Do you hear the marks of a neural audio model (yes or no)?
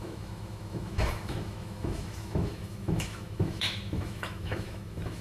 yes